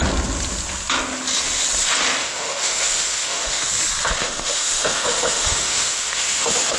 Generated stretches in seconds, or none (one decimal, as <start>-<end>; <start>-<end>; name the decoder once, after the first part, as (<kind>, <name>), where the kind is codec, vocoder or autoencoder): 2.2-3.7 (autoencoder, DAC-VAE); 4.2-6.8

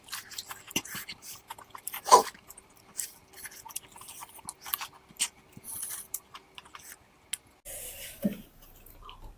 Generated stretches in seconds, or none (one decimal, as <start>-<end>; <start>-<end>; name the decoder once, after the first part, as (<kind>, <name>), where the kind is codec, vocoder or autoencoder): 0.0-3.2 (vocoder, BigVGAN v2); 5.1-6.4; 9.0-9.4

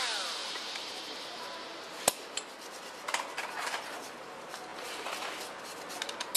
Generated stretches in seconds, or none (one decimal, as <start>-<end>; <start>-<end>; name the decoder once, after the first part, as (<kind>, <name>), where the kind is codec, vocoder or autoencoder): 0.4-1.8 (vocoder, BigVGAN v2)

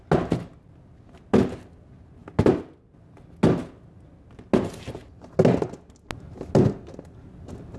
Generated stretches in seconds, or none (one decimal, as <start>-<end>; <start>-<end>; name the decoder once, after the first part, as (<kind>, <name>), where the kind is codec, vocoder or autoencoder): none

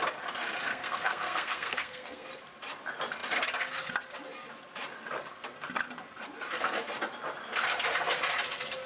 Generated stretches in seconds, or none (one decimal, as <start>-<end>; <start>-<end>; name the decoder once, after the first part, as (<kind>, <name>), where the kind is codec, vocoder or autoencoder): 0.7-2.3 (codec, SNAC)

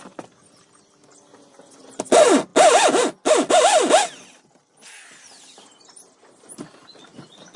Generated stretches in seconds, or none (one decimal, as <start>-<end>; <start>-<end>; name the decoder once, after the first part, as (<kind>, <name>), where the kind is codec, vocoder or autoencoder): none

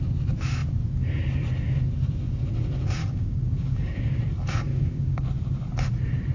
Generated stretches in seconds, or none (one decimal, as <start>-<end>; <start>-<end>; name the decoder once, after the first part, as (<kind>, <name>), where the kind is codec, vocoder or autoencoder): 3.0-4.2 (codec, DAC); 4.7-5.3

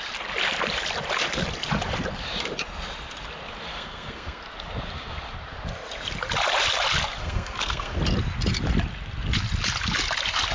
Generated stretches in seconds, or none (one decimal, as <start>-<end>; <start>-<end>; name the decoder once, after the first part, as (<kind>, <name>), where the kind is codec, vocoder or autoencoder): 3.7-4.4 (codec, SNAC); 7.2-8.0